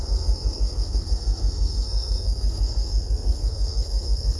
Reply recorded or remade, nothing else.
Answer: remade